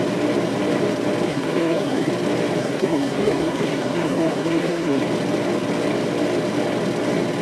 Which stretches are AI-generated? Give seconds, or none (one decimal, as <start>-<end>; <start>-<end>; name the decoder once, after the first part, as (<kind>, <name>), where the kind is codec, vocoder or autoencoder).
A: 1.3-2.1 (codec, SNAC); 2.6-5.0